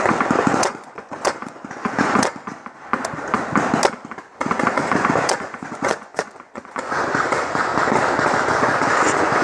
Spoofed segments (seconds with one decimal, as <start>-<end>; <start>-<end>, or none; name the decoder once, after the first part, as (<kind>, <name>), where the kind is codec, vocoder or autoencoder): 0.0-2.9 (vocoder, Vocos); 4.2-7.7; 8.4-9.4